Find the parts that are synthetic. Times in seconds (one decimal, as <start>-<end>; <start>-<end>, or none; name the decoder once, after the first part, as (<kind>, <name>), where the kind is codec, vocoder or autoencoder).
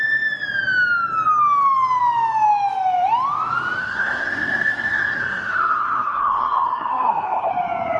3.8-7.5 (codec, SNAC)